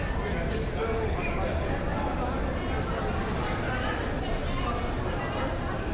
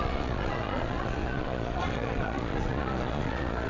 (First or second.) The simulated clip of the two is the second